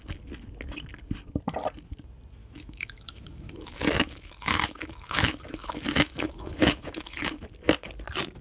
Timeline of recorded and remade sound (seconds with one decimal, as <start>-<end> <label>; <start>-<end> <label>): 0.0-2.4 recorded; 2.4-7.4 remade; 7.4-8.4 recorded